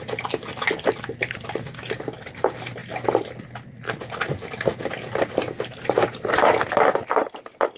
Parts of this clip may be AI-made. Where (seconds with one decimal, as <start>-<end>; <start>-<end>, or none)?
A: none